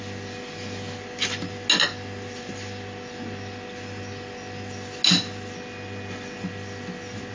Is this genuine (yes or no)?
yes